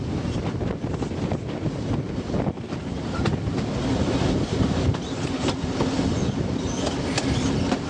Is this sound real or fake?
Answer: real